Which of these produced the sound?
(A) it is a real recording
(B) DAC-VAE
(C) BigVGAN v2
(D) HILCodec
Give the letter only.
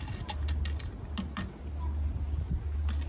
A